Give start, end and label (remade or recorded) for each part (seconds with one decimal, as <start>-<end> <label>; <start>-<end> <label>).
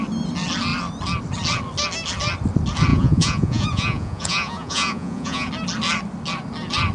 0.0-2.9 recorded; 2.9-5.5 remade; 5.5-6.9 recorded